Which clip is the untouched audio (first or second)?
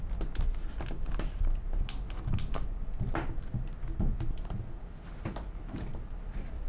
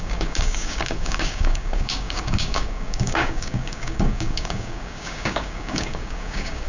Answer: first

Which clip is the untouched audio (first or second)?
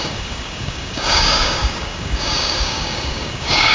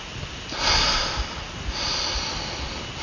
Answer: second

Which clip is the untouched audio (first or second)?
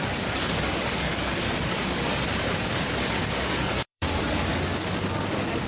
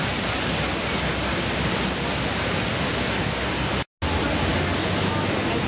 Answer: second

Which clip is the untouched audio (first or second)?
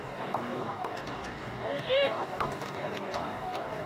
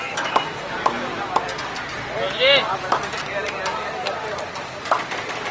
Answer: second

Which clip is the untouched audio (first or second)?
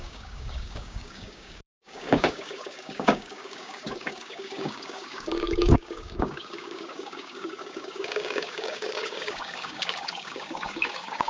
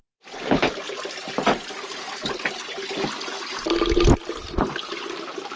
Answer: second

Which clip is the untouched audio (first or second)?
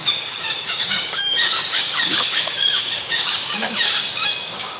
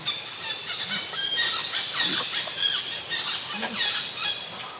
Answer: second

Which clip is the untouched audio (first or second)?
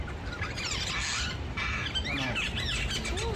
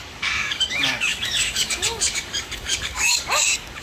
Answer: first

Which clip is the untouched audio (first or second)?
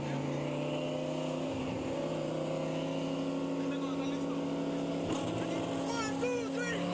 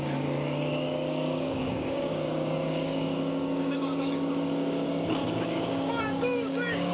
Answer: first